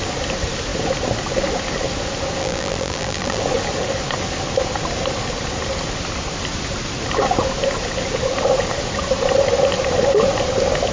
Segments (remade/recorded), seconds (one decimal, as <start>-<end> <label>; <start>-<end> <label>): 0.0-2.4 recorded; 2.4-3.4 remade; 3.4-10.9 recorded